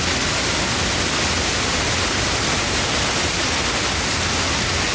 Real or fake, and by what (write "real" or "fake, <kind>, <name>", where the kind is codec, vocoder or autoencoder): real